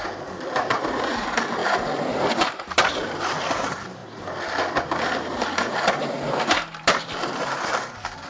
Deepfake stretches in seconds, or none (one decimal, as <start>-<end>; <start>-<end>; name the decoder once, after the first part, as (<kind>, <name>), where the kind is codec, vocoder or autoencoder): 0.0-4.0 (vocoder, BigVGAN v2); 4.8-8.3